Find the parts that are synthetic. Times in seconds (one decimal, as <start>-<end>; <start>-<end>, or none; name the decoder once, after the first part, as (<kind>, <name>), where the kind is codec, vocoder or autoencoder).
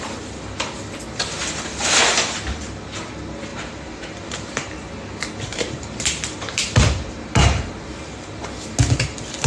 1.4-2.0 (vocoder, BigVGAN v2); 3.5-4.7; 5.5-8.4